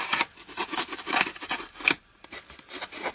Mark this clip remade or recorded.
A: recorded